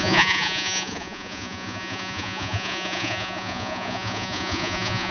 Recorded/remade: remade